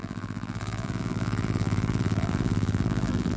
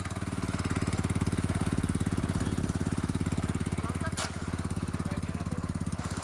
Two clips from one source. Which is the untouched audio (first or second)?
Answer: second